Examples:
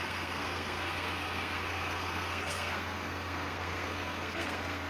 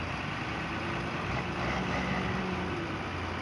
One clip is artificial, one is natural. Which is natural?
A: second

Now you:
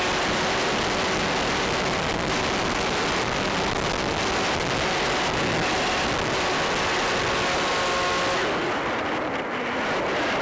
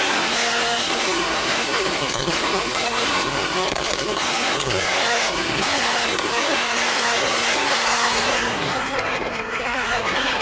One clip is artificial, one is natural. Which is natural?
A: first